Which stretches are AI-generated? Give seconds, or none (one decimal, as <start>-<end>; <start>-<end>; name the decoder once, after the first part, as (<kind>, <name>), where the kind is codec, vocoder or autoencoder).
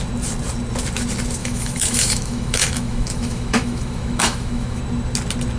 1.4-4.8 (autoencoder, DAC-VAE)